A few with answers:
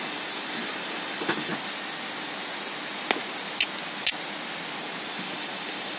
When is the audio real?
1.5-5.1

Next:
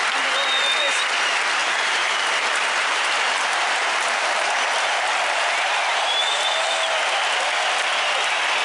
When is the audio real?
0.0-1.6; 6.7-8.6